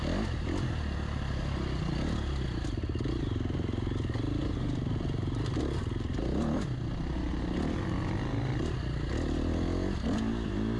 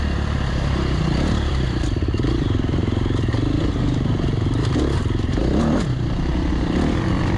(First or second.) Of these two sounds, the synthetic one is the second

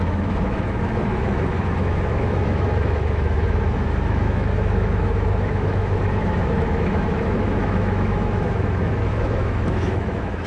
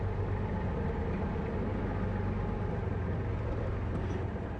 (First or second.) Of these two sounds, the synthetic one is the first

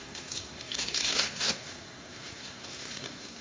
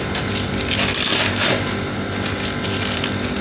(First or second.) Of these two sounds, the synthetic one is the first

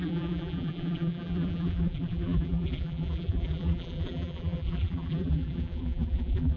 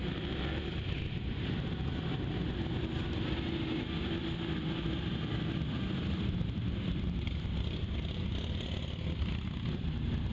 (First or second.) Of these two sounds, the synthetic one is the first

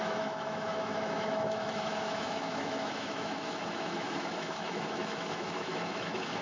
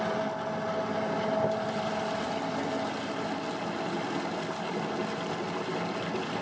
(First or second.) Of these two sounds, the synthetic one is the first